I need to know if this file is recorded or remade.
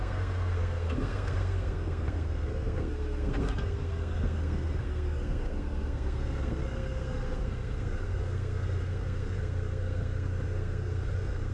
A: remade